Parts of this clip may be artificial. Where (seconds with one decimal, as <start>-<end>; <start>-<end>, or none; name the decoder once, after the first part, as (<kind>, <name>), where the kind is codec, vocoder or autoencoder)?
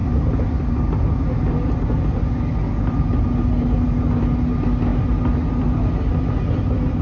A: none